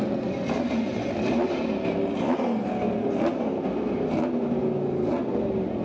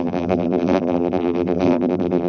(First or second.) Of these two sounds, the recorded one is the first